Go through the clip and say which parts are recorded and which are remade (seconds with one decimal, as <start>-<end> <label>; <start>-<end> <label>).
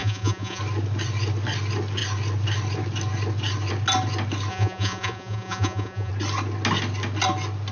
0.0-0.6 remade; 0.6-4.5 recorded; 4.5-6.1 remade; 6.1-7.7 recorded